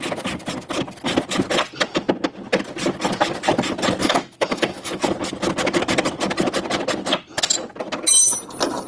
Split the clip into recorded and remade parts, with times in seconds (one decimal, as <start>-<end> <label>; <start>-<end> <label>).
0.0-4.0 recorded; 4.0-5.0 remade; 5.0-8.9 recorded